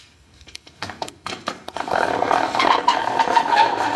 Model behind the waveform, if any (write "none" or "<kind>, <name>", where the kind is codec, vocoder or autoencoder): codec, SNAC